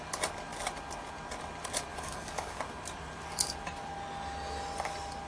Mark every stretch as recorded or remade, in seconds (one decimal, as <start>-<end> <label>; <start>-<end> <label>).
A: 0.0-1.9 recorded; 1.9-2.6 remade; 2.6-5.3 recorded